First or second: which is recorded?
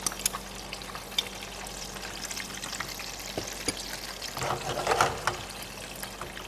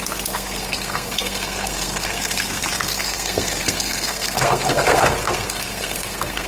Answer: first